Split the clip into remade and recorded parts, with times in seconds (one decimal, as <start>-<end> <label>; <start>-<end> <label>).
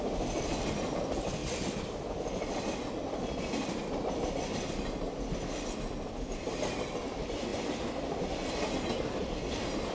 0.0-1.4 recorded; 1.4-2.8 remade; 2.8-9.9 recorded